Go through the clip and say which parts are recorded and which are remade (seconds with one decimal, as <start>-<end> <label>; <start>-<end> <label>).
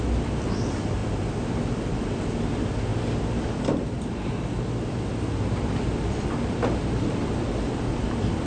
0.0-8.5 recorded